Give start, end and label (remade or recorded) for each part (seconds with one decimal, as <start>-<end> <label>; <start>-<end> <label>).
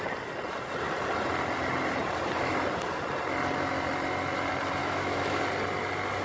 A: 0.0-4.8 recorded; 4.8-5.4 remade; 5.4-6.2 recorded